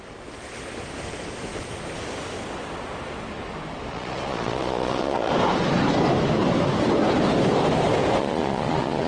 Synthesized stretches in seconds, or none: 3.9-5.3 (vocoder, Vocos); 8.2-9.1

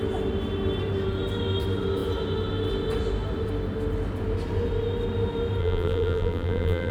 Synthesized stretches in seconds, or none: 5.6-6.9 (vocoder, BigVGAN v2)

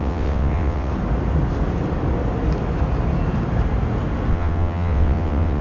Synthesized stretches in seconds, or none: 0.0-0.9 (vocoder, WaveNeXt); 4.3-5.6